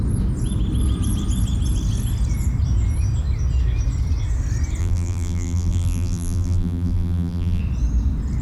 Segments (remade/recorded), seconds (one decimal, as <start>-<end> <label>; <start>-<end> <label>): 0.0-4.8 recorded; 4.8-7.6 remade; 7.6-8.4 recorded